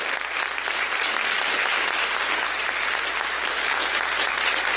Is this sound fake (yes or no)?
no